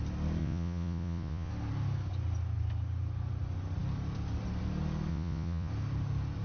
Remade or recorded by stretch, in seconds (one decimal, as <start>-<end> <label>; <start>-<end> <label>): 0.0-0.4 recorded; 0.4-1.5 remade; 1.5-5.1 recorded; 5.1-5.7 remade; 5.7-6.4 recorded